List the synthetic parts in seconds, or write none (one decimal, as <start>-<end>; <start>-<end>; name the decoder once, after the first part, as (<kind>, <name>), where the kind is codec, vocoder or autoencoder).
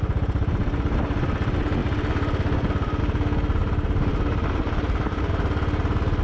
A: 4.1-5.3 (vocoder, BigVGAN v2)